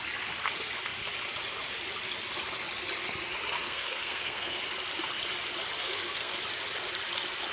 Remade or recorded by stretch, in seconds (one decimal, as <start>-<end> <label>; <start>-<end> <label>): 0.0-3.6 recorded; 3.6-4.6 remade; 4.6-5.8 recorded; 5.8-6.3 remade; 6.3-7.5 recorded